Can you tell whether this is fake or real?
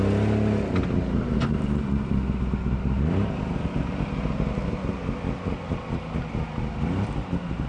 real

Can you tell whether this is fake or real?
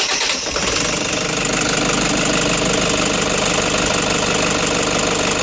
real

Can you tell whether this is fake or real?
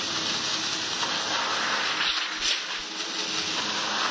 real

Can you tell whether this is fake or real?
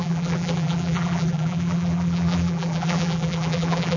fake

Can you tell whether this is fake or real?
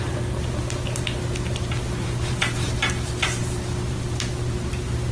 real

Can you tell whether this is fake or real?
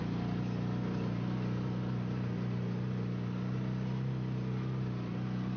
real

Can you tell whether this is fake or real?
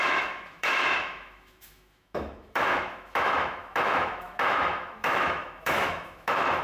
fake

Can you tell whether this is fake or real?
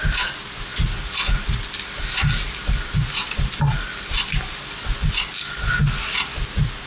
real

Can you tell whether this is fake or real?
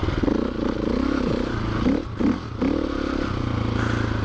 real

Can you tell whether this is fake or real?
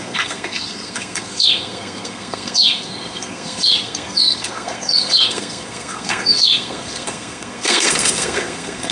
fake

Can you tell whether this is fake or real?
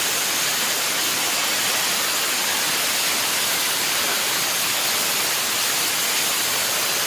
real